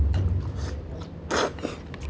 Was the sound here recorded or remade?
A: recorded